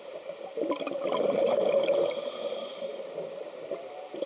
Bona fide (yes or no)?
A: yes